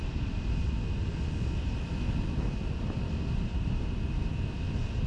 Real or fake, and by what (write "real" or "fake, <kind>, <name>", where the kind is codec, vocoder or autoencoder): fake, vocoder, BigVGAN v2